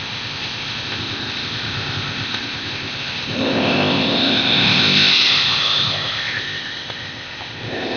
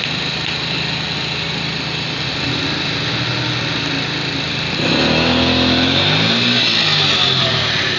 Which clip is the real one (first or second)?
second